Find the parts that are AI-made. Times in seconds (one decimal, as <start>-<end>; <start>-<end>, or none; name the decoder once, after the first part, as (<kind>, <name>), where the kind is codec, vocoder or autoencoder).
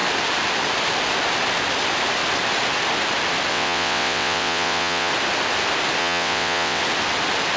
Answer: 3.5-5.1 (vocoder, WaveNeXt); 6.0-6.8